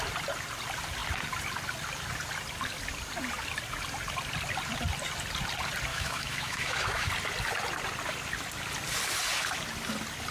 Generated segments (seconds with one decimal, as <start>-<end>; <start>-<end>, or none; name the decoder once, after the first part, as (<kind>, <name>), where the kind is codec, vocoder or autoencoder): 5.9-7.1 (autoencoder, DAC-VAE)